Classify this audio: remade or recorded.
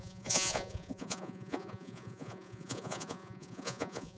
remade